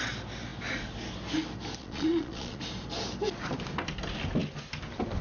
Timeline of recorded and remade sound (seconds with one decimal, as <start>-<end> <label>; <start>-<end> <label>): 0.0-1.8 recorded; 1.8-2.6 remade; 2.6-5.2 recorded